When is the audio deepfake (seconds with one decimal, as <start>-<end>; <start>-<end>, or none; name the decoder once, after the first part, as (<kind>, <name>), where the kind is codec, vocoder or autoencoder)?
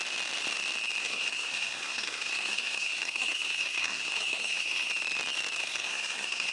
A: 1.0-4.9 (codec, SNAC); 5.6-6.5